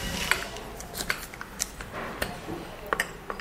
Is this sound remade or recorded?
remade